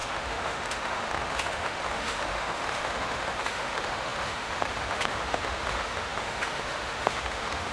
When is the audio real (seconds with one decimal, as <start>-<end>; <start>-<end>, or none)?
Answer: none